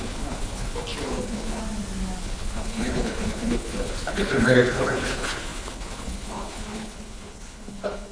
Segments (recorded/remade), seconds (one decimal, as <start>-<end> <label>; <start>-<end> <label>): 0.0-1.6 remade; 1.6-2.2 recorded; 2.2-8.1 remade